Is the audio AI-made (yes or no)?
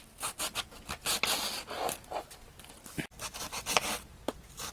no